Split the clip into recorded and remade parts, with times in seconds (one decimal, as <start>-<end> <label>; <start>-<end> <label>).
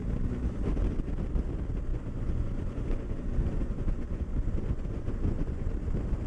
0.0-1.9 recorded; 1.9-5.7 remade; 5.7-6.3 recorded